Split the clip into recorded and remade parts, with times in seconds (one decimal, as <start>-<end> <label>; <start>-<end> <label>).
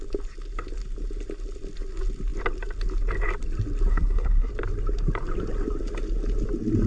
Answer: 0.0-3.9 recorded; 3.9-4.5 remade; 4.5-6.9 recorded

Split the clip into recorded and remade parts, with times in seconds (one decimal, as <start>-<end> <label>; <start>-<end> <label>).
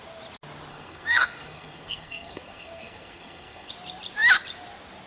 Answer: 0.0-0.7 recorded; 0.7-3.7 remade; 3.7-5.1 recorded